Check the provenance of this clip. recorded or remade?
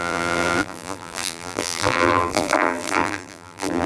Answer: remade